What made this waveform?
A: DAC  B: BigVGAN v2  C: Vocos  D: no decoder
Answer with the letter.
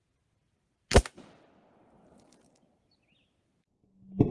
D